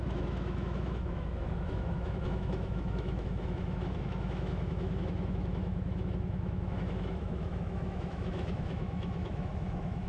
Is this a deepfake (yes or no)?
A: yes